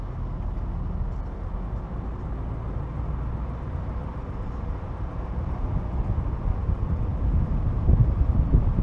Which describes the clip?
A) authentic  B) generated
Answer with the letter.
A